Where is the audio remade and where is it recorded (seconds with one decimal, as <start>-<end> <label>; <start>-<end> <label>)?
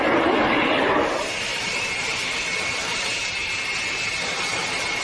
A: 0.0-1.5 recorded; 1.5-2.1 remade; 2.1-2.8 recorded; 2.8-3.5 remade; 3.5-5.0 recorded